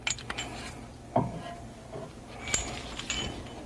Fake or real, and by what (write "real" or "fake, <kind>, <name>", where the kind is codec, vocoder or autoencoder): real